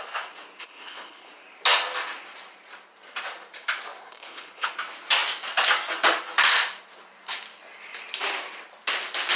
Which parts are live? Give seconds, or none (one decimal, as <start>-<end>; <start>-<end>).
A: 0.0-0.6; 1.3-4.0; 4.7-9.4